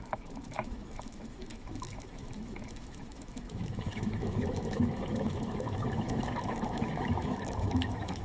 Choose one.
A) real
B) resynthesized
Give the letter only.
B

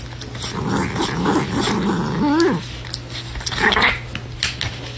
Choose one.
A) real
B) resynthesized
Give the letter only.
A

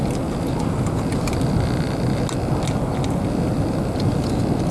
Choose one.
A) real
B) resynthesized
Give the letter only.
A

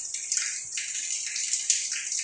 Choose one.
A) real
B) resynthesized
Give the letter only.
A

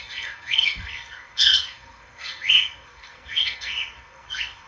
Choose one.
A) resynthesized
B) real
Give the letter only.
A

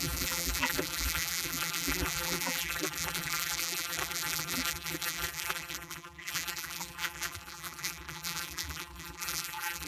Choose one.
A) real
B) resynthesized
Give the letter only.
B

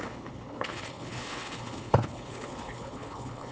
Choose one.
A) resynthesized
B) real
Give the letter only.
A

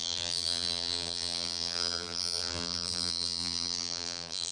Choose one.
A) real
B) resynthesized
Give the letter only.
B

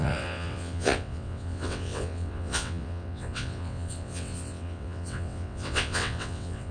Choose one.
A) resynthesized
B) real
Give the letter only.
A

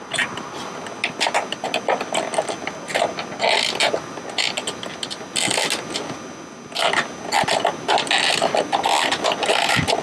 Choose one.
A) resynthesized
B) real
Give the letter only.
B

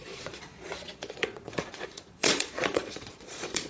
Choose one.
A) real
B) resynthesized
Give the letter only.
B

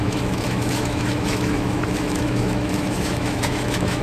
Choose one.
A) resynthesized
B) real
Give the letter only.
A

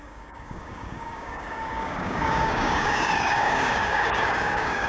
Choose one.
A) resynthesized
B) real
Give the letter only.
A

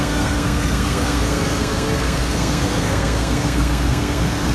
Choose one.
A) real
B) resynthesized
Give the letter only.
B